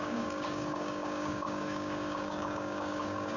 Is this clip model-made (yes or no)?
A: yes